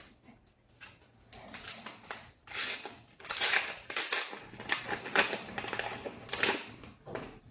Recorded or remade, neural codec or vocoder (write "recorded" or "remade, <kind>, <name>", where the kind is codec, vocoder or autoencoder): recorded